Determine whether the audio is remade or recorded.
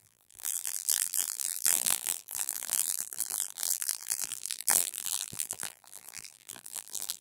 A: remade